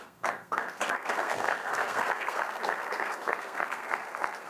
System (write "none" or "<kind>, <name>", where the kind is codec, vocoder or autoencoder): codec, SNAC